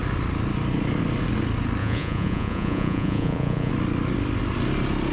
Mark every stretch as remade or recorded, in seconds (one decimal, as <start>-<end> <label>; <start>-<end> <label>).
0.0-1.8 recorded; 1.8-3.7 remade; 3.7-5.1 recorded